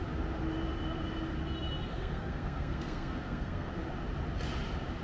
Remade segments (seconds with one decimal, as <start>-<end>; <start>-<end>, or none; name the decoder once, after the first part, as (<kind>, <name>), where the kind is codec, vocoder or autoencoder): 1.9-3.7 (codec, SNAC)